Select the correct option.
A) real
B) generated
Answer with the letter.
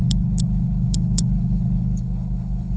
B